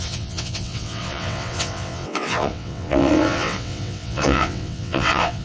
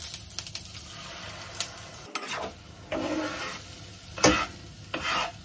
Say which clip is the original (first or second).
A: second